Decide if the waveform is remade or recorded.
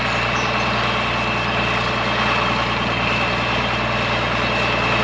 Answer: recorded